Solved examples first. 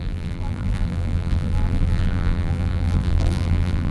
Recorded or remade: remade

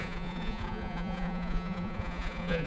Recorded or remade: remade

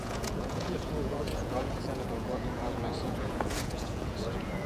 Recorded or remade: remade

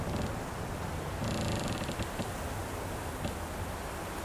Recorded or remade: recorded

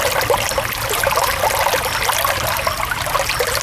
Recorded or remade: recorded